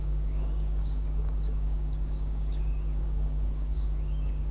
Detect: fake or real fake